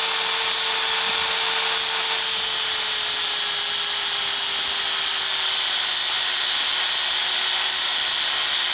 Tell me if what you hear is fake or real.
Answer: real